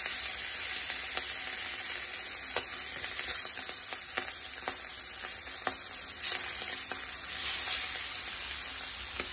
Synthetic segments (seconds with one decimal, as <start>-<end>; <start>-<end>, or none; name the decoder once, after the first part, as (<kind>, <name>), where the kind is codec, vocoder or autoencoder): none